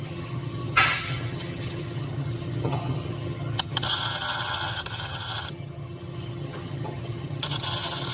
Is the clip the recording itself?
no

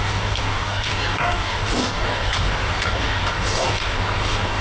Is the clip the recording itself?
no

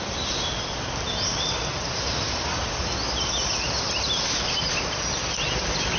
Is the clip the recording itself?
yes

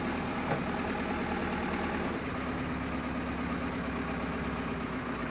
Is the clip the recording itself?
yes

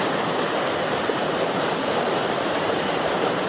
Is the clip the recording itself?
yes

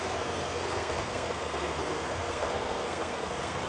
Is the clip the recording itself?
no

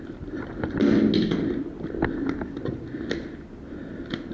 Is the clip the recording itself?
yes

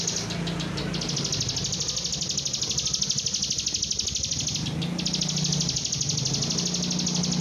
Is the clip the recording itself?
yes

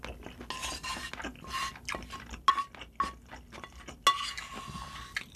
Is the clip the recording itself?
yes